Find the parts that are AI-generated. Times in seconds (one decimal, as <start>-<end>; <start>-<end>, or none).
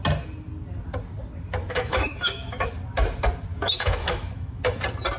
1.6-2.7; 3.5-4.6